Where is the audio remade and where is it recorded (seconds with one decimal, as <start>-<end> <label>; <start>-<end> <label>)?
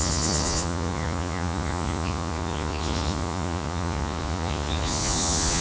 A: 0.0-5.6 remade